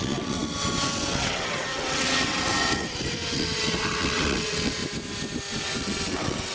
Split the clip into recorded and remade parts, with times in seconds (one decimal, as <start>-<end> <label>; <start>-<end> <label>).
0.0-4.8 remade; 4.8-5.5 recorded; 5.5-6.5 remade